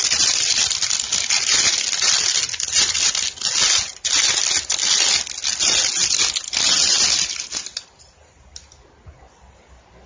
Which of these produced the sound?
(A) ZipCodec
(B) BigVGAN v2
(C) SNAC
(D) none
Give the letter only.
D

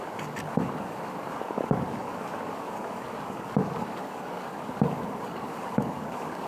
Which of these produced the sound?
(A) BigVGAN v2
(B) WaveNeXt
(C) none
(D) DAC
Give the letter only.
D